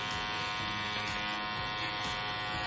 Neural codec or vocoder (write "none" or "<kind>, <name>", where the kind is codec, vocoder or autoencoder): none